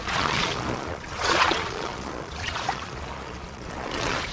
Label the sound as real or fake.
fake